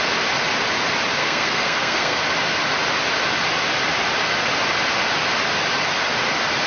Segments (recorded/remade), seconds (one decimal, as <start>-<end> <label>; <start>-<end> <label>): 0.0-1.2 recorded; 1.2-2.2 remade; 2.2-6.7 recorded

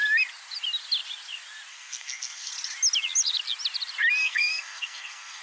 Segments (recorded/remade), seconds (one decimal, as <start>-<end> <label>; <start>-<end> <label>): 0.0-1.7 recorded; 1.7-2.5 remade; 2.5-4.2 recorded; 4.2-5.4 remade

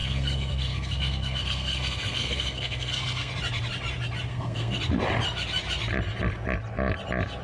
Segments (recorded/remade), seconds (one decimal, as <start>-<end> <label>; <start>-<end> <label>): 0.0-3.3 remade; 3.3-4.3 recorded; 4.3-4.8 remade; 4.8-7.4 recorded

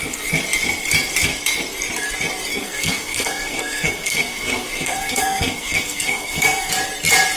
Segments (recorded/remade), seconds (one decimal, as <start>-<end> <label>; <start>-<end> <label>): 0.0-2.5 recorded; 2.5-6.7 remade; 6.7-7.4 recorded